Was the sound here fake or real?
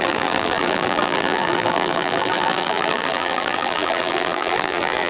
fake